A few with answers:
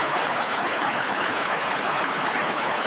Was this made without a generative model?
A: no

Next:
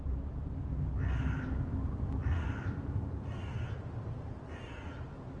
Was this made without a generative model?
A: yes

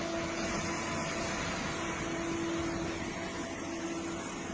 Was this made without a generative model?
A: yes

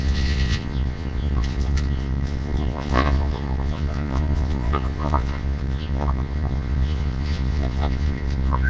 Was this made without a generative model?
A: no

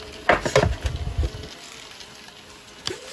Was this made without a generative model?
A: yes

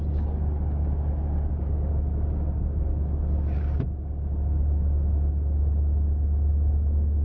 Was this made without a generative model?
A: yes